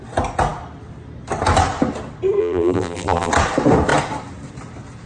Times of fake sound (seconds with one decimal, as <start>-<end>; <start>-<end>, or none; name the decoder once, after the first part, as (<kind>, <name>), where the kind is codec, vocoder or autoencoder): 2.4-3.3 (vocoder, BigVGAN v2)